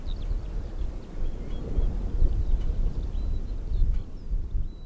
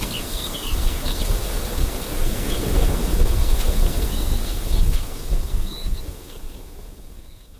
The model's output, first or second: second